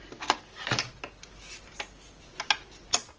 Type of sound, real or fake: real